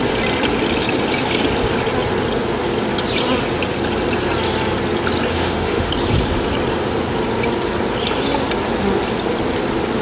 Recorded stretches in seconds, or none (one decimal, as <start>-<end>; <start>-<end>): 0.0-5.3; 5.9-10.0